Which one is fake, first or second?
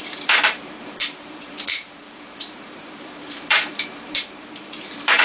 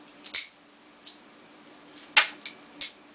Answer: first